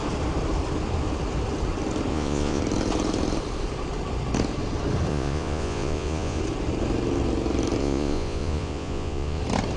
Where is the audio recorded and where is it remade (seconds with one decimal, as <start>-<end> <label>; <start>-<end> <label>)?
0.0-2.1 recorded; 2.1-2.6 remade; 2.6-5.1 recorded; 5.1-6.4 remade; 6.4-7.8 recorded; 7.8-9.4 remade; 9.4-9.8 recorded